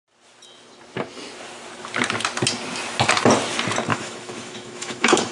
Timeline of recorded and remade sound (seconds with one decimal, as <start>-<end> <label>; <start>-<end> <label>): 0.0-3.9 recorded; 3.9-5.3 remade